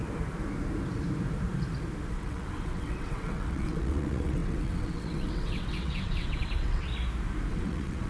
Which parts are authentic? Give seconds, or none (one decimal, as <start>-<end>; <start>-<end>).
0.0-2.1; 6.9-7.5